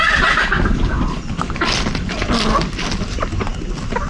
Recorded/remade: recorded